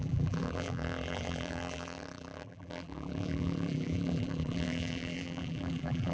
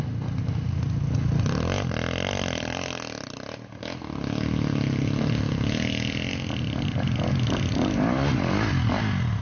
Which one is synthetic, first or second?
first